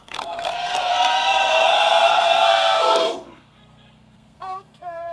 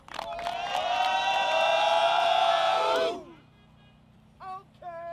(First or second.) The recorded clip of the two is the second